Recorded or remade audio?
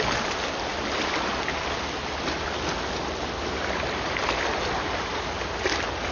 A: recorded